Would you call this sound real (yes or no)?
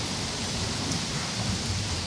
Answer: no